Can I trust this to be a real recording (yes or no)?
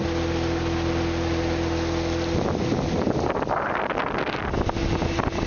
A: yes